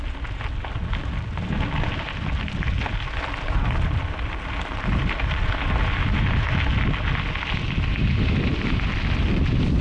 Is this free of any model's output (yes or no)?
yes